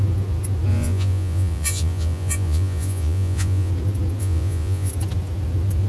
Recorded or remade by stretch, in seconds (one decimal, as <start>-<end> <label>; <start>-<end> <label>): 0.0-0.7 recorded; 0.7-3.7 remade; 3.7-4.2 recorded; 4.2-4.9 remade; 4.9-5.9 recorded

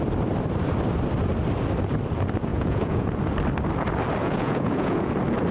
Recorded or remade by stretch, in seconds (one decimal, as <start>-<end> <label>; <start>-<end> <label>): 0.0-2.5 recorded; 2.5-3.2 remade; 3.2-4.2 recorded; 4.2-5.1 remade; 5.1-5.5 recorded

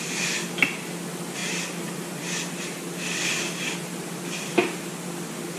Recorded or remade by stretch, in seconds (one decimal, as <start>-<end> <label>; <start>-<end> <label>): 0.0-5.6 recorded

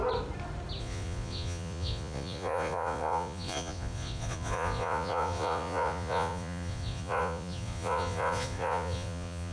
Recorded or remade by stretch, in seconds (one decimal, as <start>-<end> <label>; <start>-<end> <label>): 0.0-0.8 recorded; 0.8-9.5 remade